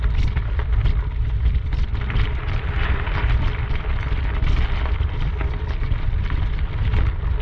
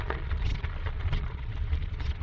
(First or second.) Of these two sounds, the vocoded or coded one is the second